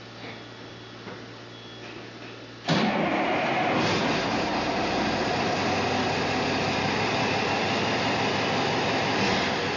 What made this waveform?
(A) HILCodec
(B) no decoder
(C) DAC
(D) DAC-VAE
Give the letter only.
B